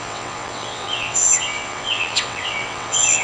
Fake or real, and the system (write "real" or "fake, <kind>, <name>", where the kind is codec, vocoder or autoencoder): fake, vocoder, WaveNeXt